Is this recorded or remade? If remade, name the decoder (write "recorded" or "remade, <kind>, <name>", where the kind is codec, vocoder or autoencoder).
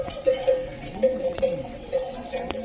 remade, vocoder, WaveNeXt